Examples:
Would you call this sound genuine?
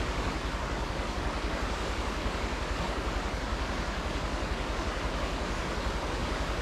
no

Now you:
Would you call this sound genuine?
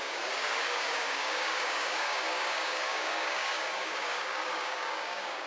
no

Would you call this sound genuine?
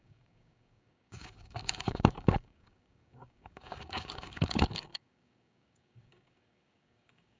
no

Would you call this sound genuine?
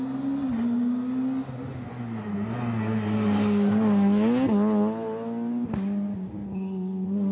yes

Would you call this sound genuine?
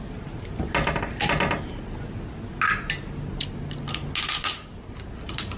yes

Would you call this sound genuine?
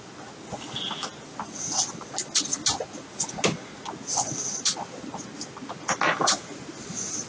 yes